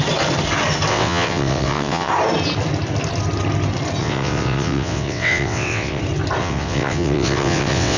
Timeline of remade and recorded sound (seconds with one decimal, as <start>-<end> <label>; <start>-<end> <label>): 0.0-0.9 recorded; 0.9-2.1 remade; 2.1-4.0 recorded; 4.0-6.0 remade; 6.0-6.4 recorded; 6.4-8.0 remade